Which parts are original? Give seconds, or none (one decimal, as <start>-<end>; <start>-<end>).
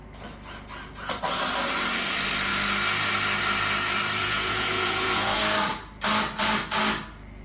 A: 0.0-4.2; 5.4-7.4